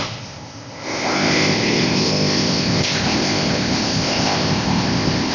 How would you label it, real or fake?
fake